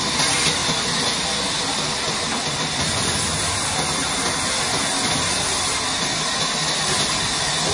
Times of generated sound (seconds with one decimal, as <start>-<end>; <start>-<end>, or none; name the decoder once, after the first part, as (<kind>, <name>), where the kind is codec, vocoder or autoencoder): none